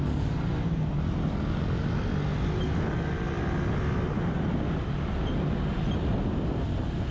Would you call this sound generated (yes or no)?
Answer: no